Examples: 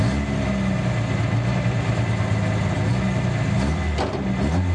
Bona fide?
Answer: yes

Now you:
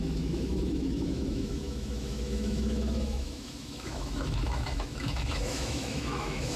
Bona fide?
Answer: no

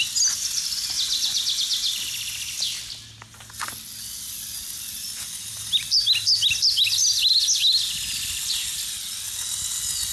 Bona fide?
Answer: yes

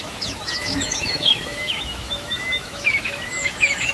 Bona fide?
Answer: no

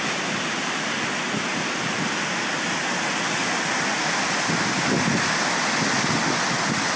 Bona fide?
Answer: yes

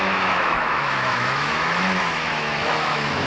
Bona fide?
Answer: no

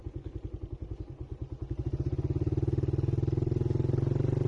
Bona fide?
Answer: yes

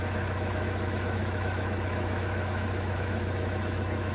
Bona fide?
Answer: no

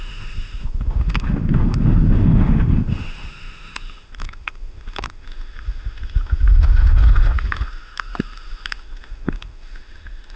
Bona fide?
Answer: no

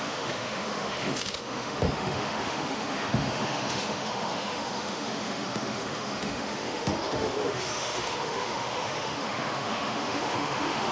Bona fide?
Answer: no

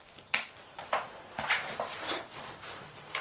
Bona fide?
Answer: yes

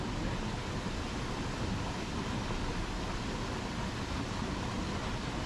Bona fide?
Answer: yes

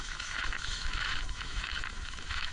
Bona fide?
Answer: no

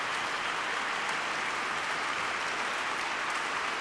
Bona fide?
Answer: yes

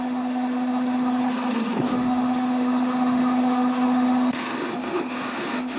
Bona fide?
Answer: no